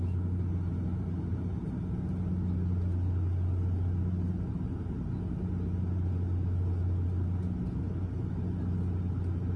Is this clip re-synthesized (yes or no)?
no